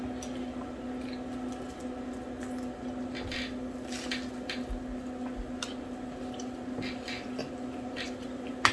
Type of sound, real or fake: real